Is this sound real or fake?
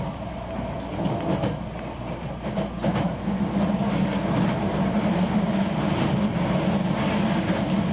real